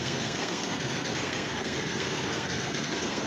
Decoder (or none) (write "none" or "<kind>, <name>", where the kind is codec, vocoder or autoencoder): codec, SNAC